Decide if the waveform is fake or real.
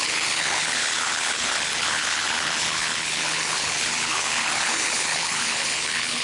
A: fake